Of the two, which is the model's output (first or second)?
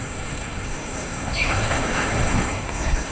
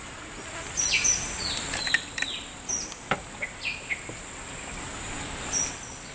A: first